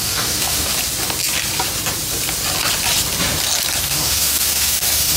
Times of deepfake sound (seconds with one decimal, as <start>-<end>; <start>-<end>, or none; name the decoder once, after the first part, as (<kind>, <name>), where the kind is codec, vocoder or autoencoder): 0.0-0.7 (codec, DAC); 3.8-5.2